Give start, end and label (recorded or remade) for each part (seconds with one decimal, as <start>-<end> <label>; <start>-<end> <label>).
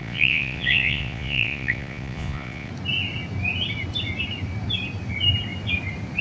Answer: 0.0-2.7 remade; 2.7-6.2 recorded